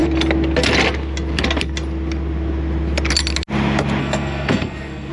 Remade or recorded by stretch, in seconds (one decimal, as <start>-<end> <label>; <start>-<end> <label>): 0.0-4.0 recorded; 4.0-5.1 remade